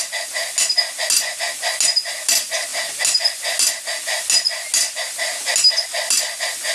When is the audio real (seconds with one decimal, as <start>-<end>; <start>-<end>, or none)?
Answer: 0.0-6.7